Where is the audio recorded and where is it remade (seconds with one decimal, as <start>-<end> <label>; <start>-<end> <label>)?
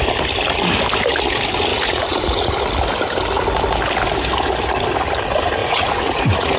0.0-1.7 recorded; 1.7-2.5 remade; 2.5-5.6 recorded; 5.6-6.6 remade